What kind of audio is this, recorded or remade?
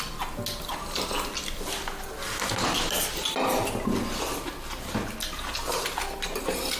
recorded